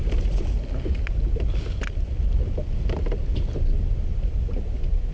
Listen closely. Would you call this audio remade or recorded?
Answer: recorded